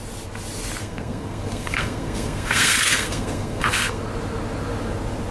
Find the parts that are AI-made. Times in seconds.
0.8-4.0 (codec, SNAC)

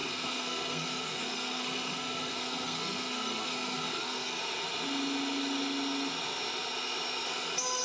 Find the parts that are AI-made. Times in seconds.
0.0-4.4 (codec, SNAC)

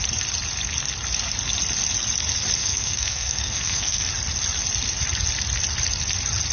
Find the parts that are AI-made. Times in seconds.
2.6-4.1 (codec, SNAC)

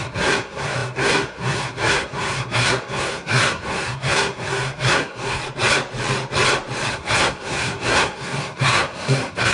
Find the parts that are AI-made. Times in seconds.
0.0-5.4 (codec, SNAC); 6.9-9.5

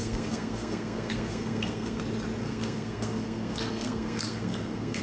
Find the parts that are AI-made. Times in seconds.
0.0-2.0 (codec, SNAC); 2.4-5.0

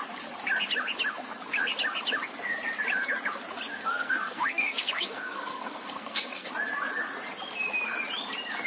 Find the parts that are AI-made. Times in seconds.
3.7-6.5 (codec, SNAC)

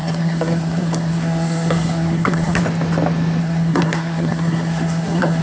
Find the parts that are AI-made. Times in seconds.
0.0-2.6 (codec, SNAC); 3.4-5.4